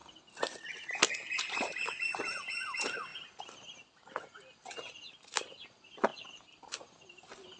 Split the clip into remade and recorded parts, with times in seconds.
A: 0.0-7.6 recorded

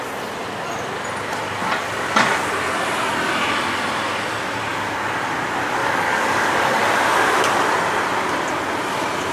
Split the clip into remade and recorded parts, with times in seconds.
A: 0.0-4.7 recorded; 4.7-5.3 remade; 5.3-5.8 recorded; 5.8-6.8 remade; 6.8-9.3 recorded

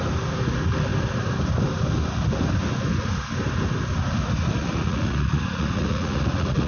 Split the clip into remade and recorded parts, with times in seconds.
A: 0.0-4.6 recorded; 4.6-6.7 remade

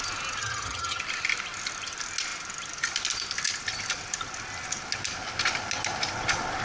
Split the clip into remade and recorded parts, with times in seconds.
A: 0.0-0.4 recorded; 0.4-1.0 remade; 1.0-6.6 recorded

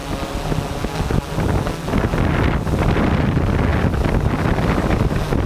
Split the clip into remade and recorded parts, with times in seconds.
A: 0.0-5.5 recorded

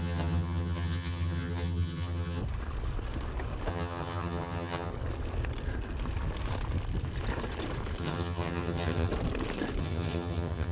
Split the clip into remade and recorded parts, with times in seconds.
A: 0.0-2.4 remade; 2.4-3.7 recorded; 3.7-4.9 remade; 4.9-8.0 recorded; 8.0-9.1 remade; 9.1-9.8 recorded; 9.8-10.7 remade